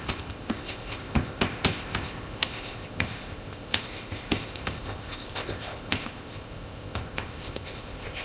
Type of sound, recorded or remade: remade